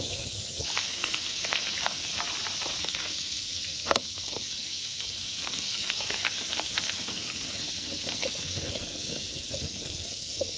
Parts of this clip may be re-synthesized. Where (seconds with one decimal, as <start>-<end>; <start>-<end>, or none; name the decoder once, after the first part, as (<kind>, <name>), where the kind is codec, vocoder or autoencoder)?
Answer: 0.0-2.1 (codec, SNAC); 2.8-10.6